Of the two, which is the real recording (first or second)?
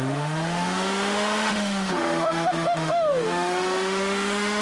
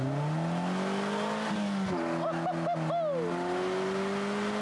second